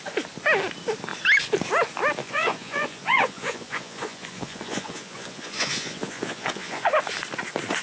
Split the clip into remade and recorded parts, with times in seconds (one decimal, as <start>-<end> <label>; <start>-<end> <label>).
0.0-2.2 recorded; 2.2-6.9 remade; 6.9-7.8 recorded